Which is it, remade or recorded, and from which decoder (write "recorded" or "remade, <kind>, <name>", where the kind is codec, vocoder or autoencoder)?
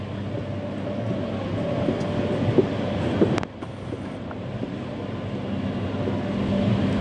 recorded